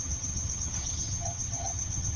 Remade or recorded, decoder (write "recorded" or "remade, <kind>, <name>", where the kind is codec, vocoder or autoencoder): remade, vocoder, HiFi-GAN